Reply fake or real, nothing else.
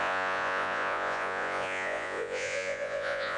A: fake